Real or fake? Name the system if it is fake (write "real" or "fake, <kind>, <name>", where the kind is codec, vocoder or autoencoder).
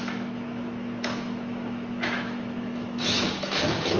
fake, autoencoder, DAC-VAE